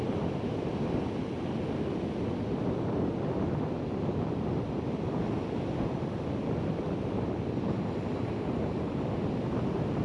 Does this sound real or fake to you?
real